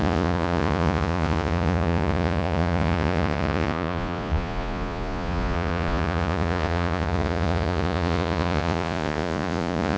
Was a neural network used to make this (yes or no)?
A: yes